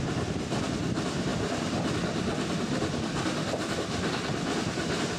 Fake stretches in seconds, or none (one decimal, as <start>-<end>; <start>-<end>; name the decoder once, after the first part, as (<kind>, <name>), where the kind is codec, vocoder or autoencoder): none